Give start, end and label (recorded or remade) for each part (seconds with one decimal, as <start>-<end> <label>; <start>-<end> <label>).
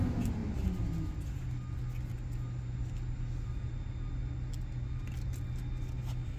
0.0-6.4 recorded